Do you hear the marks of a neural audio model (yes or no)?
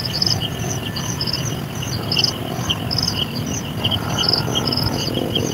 no